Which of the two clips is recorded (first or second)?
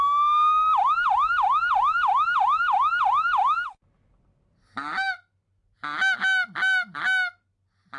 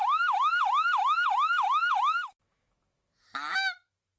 first